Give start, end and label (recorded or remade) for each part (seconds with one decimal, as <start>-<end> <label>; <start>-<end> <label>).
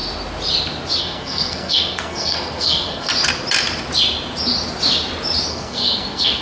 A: 0.0-1.0 recorded; 1.0-3.1 remade; 3.1-5.5 recorded; 5.5-6.4 remade